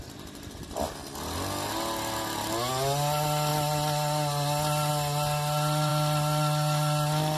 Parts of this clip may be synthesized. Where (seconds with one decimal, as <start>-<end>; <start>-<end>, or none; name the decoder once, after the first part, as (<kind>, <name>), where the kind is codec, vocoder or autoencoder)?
none

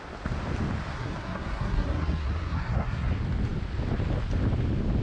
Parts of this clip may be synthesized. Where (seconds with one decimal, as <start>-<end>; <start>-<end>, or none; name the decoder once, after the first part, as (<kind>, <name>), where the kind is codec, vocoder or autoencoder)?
0.9-3.1 (codec, SNAC)

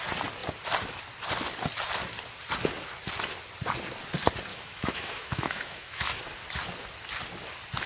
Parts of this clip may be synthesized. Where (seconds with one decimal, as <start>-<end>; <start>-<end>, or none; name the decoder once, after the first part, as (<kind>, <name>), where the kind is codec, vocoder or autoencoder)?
4.5-6.2 (autoencoder, DAC-VAE)

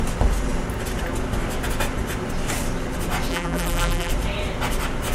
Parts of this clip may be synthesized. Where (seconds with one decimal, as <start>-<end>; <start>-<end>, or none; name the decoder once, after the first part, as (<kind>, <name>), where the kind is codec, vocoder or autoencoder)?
3.3-4.1 (vocoder, BigVGAN v2)

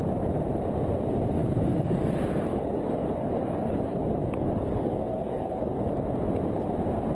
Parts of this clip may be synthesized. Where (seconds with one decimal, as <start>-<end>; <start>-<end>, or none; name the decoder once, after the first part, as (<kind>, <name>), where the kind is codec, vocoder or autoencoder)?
1.4-2.1 (codec, DAC); 2.5-5.8

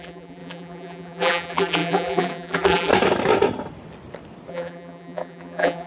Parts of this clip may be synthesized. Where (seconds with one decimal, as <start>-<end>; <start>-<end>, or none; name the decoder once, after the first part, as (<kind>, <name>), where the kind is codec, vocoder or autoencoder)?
0.0-2.9 (vocoder, BigVGAN v2); 4.5-5.9